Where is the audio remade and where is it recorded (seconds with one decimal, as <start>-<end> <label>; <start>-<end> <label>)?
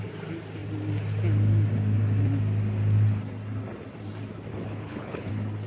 0.0-4.5 recorded; 4.5-5.3 remade; 5.3-5.7 recorded